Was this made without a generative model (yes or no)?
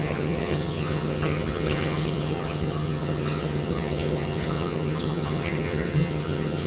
no